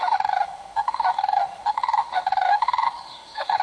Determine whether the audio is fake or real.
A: fake